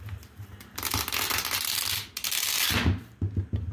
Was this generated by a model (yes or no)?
no